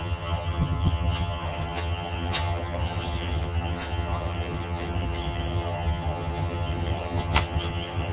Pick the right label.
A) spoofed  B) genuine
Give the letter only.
A